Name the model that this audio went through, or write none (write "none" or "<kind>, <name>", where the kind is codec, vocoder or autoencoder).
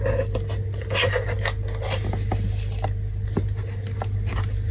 none